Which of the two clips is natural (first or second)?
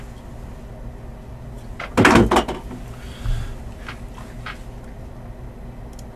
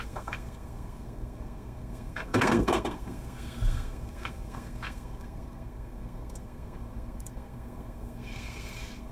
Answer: first